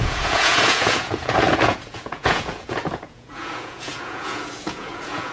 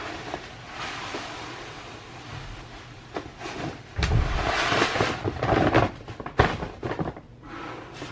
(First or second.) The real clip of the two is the second